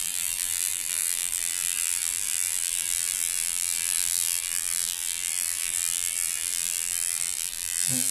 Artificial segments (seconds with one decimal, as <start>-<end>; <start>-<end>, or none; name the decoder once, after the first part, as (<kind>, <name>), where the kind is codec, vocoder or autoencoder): 0.0-8.1 (vocoder, BigVGAN v2)